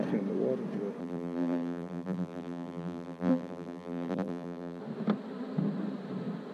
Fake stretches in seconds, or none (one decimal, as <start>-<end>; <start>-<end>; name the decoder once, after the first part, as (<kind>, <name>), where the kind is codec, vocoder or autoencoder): 1.0-4.8 (vocoder, BigVGAN v2)